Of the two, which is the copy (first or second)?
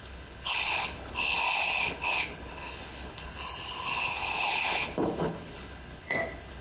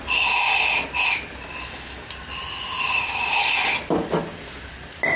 first